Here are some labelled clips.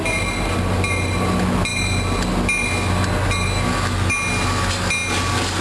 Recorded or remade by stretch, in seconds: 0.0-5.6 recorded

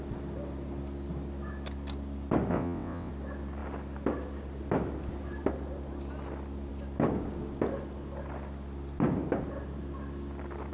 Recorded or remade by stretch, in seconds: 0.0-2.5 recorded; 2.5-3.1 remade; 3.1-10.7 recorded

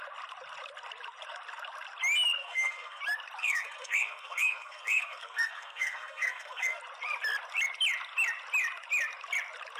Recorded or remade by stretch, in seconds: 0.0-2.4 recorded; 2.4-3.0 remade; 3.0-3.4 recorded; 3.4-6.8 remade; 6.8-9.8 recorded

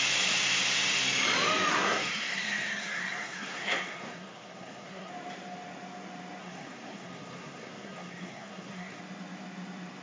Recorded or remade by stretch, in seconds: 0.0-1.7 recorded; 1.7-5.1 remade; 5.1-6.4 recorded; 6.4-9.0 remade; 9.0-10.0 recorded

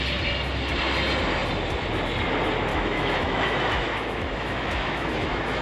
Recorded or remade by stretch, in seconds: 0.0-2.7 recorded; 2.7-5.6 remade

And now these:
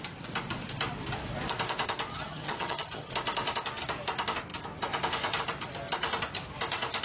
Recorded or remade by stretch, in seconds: 0.0-2.1 recorded; 2.1-3.1 remade; 3.1-7.0 recorded

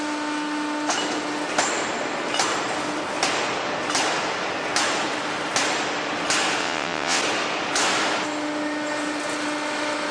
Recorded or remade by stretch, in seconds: 0.0-6.6 recorded; 6.6-7.2 remade; 7.2-10.1 recorded

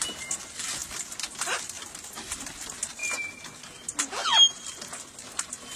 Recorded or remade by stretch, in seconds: 0.0-5.8 recorded